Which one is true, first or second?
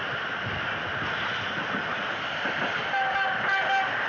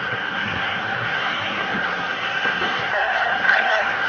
first